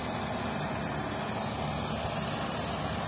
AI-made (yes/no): no